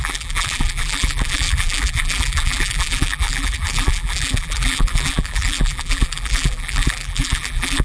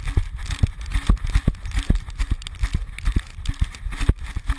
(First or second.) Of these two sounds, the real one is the second